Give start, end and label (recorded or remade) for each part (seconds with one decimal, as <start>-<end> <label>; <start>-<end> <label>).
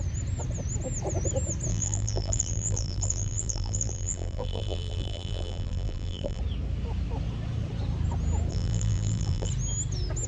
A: 0.0-1.7 recorded; 1.7-6.4 remade; 6.4-8.5 recorded; 8.5-9.5 remade; 9.5-10.3 recorded